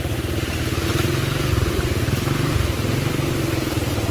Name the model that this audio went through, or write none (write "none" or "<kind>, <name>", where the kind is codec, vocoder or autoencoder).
none